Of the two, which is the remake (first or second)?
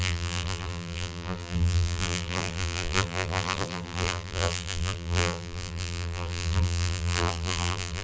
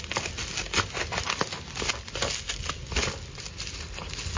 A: first